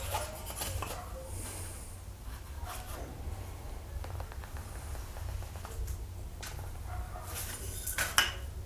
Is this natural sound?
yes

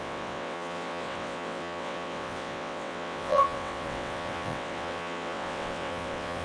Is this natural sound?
no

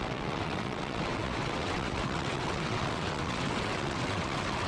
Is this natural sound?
no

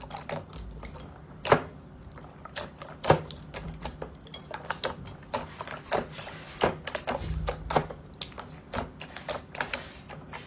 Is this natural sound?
yes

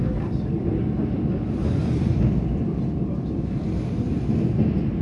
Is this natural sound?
yes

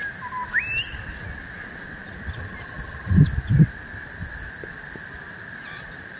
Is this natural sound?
yes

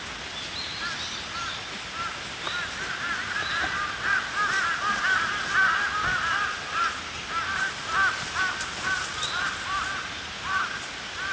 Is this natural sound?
yes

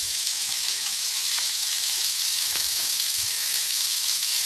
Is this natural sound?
no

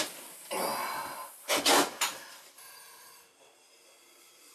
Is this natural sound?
yes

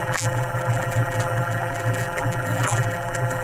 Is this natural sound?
no